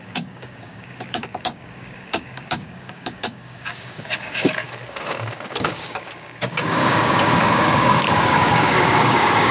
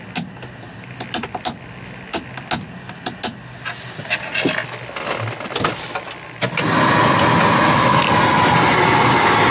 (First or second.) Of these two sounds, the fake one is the first